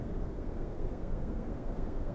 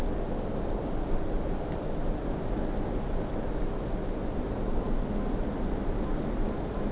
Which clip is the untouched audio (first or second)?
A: second